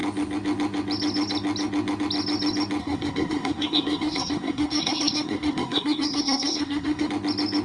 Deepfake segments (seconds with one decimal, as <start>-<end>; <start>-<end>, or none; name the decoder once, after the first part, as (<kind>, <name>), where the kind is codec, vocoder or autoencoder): 2.8-7.1 (codec, SNAC)

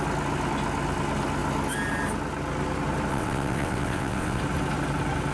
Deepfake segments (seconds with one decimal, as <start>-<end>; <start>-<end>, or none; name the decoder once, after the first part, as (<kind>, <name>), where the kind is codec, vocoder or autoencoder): 3.1-4.4 (vocoder, WaveNeXt)

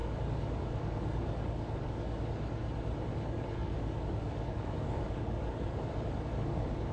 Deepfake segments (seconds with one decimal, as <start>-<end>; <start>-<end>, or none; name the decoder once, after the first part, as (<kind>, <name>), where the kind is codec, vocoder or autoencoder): 0.0-2.6 (codec, DAC); 3.1-6.9